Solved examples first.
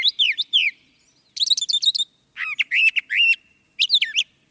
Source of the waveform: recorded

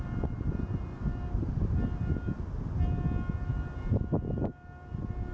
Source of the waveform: recorded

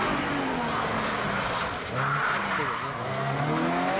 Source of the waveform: recorded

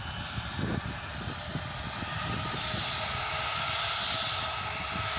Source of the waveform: recorded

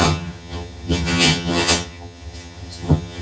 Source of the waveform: remade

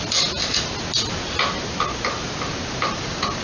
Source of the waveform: recorded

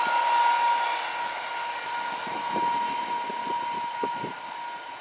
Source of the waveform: recorded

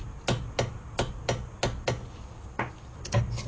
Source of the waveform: recorded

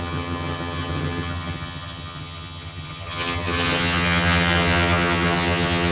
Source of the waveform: remade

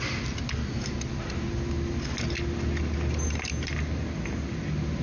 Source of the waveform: recorded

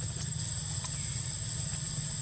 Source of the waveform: recorded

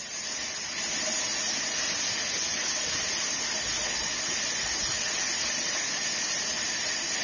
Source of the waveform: recorded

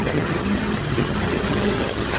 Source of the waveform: remade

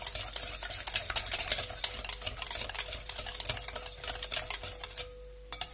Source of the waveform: recorded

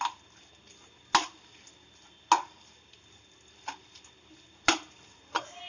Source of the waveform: recorded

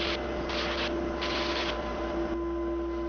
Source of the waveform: recorded